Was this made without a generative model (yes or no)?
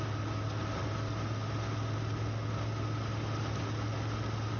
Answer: yes